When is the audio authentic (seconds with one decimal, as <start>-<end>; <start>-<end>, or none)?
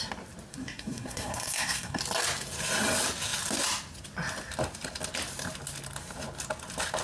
0.0-0.5; 2.0-7.0